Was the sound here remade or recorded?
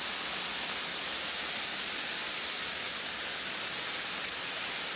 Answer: recorded